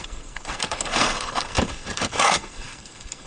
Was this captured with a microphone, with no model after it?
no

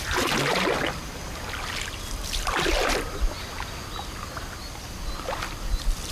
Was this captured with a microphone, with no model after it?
yes